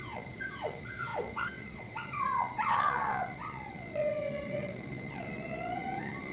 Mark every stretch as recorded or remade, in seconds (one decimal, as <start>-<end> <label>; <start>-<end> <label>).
0.0-6.3 remade